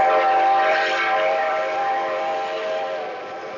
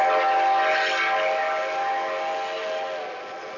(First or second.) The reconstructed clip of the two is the first